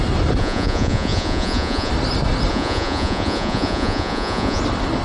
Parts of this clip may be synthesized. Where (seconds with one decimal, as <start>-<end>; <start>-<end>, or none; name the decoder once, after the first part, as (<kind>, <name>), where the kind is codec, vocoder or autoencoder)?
0.4-1.9 (vocoder, Vocos); 2.5-4.6